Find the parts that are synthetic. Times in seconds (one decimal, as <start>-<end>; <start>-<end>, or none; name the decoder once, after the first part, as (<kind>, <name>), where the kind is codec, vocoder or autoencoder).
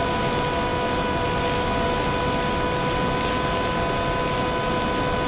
none